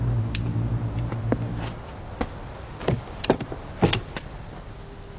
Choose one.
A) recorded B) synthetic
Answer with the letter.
A